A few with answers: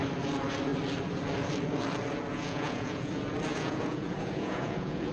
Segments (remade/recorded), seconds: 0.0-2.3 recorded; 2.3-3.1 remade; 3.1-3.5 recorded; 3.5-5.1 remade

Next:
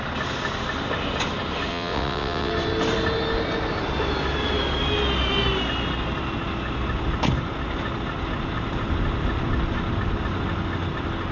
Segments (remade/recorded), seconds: 0.0-1.7 recorded; 1.7-2.5 remade; 2.5-11.3 recorded

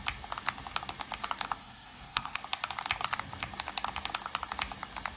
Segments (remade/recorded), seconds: 0.0-1.6 recorded; 1.6-2.4 remade; 2.4-5.2 recorded

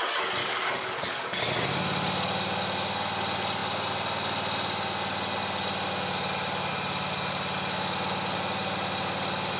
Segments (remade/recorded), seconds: 0.0-0.4 recorded; 0.4-1.4 remade; 1.4-9.6 recorded

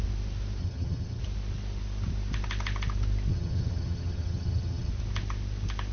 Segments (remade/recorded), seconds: 0.0-0.6 recorded; 0.6-1.2 remade; 1.2-3.3 recorded; 3.3-4.9 remade; 4.9-5.9 recorded

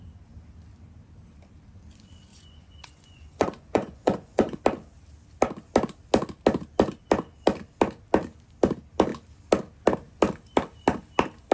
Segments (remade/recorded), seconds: 0.0-2.3 recorded; 2.3-4.6 remade; 4.6-11.5 recorded